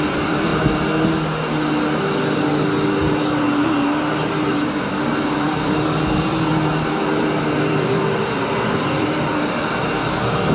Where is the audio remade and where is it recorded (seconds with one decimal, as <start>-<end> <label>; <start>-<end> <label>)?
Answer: 0.0-0.5 remade; 0.5-4.5 recorded; 4.5-10.5 remade